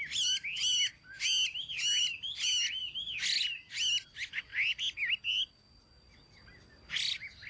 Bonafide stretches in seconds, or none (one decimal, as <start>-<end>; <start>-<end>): 0.0-7.5